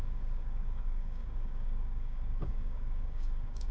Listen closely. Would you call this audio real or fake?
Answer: fake